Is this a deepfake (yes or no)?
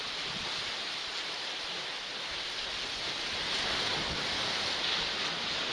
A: no